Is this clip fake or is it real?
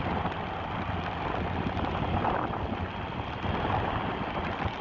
real